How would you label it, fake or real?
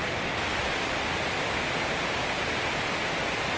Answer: real